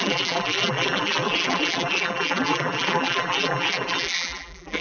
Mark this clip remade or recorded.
remade